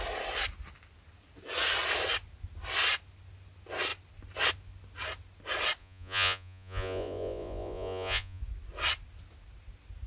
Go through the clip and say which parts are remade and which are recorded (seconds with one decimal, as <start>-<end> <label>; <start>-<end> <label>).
0.0-5.8 recorded; 5.8-8.4 remade; 8.4-10.1 recorded